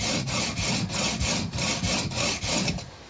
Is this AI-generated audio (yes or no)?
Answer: yes